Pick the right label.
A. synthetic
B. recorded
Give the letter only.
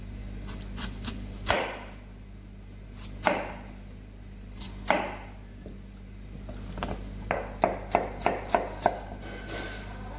B